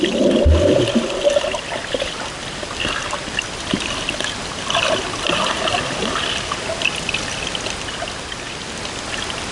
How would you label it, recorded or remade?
recorded